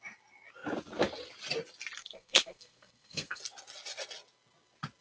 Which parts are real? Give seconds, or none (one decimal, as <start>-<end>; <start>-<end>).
0.0-2.0; 3.4-5.0